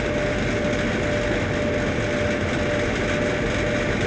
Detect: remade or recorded recorded